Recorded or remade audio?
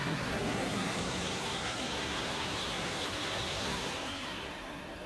remade